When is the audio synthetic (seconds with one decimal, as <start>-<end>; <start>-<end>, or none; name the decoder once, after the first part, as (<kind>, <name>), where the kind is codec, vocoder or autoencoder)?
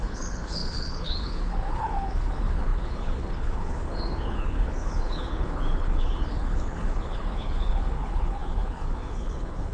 0.0-9.7 (codec, HILCodec)